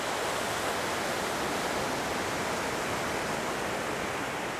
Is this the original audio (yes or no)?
yes